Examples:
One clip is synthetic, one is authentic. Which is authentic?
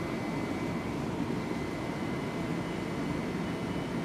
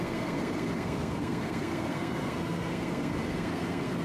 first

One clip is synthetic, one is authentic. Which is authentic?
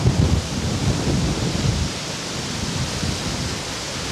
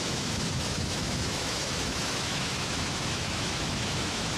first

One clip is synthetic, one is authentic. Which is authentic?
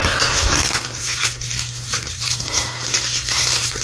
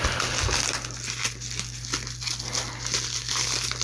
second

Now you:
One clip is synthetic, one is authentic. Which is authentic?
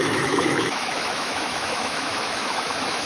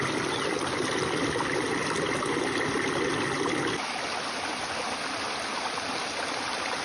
second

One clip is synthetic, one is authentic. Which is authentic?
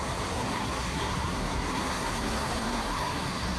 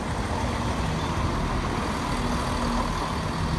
second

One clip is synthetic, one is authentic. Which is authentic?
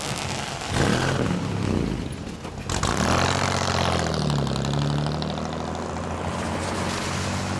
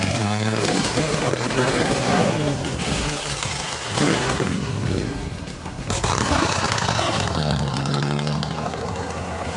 first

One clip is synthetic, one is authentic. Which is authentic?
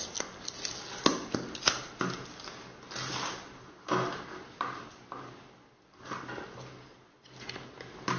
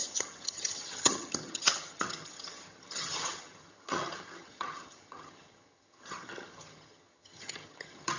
first